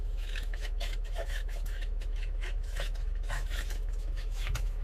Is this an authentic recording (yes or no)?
no